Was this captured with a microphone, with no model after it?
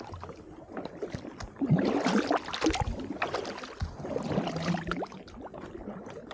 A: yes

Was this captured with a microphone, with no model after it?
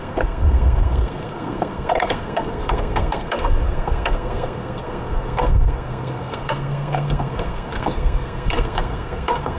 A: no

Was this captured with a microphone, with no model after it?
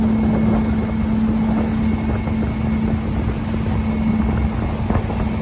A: yes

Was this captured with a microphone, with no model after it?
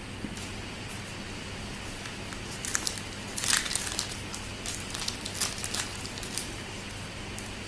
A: yes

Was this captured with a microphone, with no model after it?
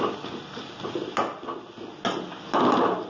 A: yes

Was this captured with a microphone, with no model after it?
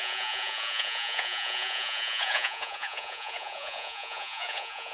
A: no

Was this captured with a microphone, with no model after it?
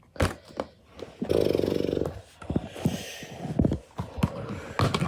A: yes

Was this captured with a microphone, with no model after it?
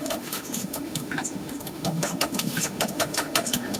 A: no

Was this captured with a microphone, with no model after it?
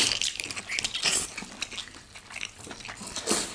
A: yes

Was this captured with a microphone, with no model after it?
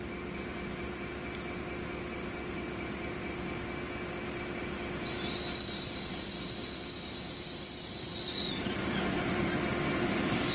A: yes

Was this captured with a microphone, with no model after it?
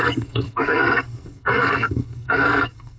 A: no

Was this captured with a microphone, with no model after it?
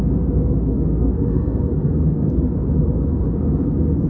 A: no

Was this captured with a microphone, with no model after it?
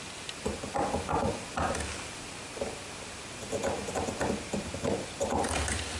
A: yes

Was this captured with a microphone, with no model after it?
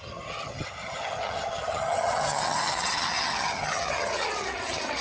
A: no